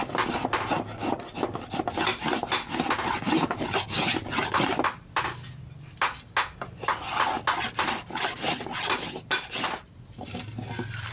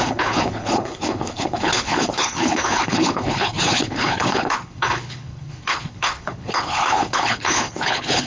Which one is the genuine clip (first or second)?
first